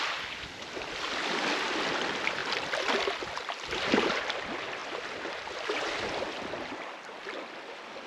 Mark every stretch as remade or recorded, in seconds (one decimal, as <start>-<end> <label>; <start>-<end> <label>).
0.0-8.1 recorded